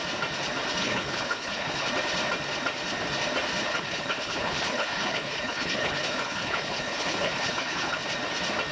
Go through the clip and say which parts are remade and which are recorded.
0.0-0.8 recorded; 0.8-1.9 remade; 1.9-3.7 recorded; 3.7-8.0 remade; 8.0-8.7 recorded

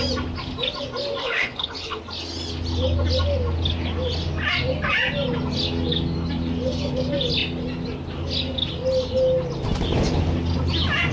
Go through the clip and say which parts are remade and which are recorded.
0.0-1.2 recorded; 1.2-2.0 remade; 2.0-11.1 recorded